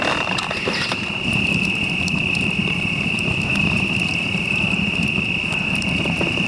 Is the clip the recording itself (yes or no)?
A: no